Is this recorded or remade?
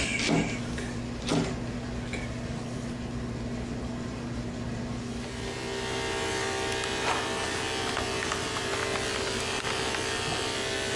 recorded